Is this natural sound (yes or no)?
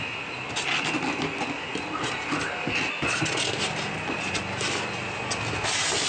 yes